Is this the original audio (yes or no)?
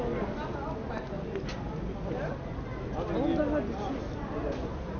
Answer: yes